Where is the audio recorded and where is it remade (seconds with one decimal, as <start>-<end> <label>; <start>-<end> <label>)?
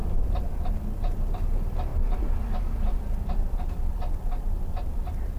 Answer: 0.0-0.7 remade; 0.7-1.9 recorded; 1.9-5.4 remade